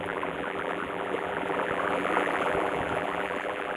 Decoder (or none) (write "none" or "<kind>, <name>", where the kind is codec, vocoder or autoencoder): vocoder, BigVGAN v2